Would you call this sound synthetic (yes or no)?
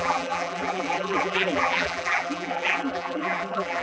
yes